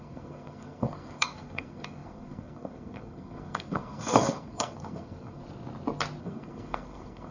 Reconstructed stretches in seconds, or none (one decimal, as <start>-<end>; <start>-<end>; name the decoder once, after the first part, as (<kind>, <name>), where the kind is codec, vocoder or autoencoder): 0.0-5.4 (codec, SNAC); 6.2-7.3